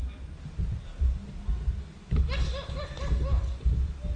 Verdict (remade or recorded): recorded